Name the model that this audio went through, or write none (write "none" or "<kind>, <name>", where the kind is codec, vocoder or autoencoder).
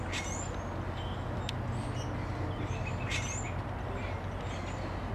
none